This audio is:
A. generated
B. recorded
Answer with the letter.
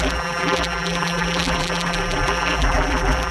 A